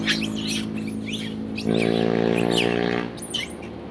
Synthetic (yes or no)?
no